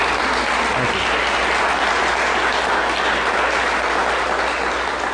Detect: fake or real real